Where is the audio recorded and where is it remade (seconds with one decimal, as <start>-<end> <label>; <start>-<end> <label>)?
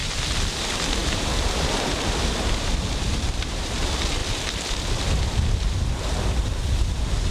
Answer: 0.0-1.0 remade; 1.0-3.1 recorded; 3.1-7.3 remade